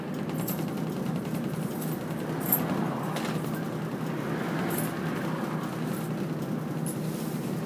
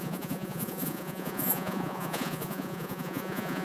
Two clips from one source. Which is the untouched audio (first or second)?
first